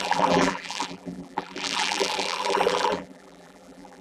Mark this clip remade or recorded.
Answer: remade